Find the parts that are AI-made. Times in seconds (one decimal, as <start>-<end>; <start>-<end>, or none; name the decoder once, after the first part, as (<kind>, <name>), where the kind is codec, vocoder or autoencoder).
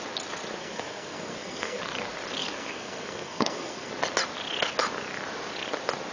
0.6-1.8 (codec, SNAC); 2.4-3.9